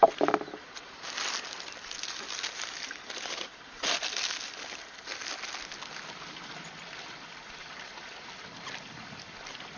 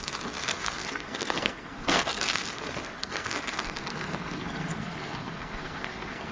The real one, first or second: first